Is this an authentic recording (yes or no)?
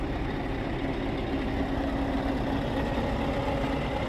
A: yes